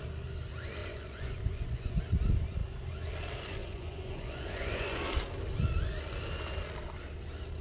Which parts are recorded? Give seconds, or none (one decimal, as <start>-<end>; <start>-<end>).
0.0-0.8; 2.0-3.6; 5.0-7.6